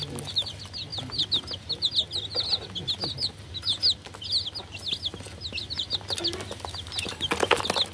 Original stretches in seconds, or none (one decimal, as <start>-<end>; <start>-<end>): 0.0-7.9